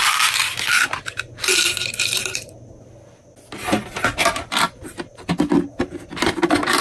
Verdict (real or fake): real